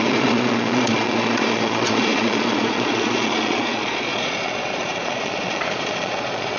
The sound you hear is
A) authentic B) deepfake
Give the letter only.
B